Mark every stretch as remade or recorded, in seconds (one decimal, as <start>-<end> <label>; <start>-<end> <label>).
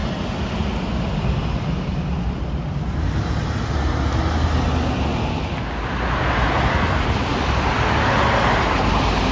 0.0-9.3 recorded